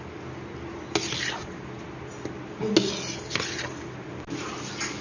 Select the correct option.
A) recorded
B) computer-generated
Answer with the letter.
A